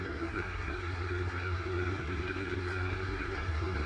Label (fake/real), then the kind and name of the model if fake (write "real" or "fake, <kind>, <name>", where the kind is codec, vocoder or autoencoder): fake, codec, SNAC